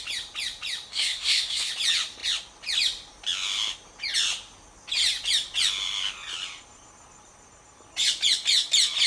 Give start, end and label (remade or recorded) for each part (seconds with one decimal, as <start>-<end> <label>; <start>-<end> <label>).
0.0-0.9 recorded; 0.9-1.7 remade; 1.7-9.1 recorded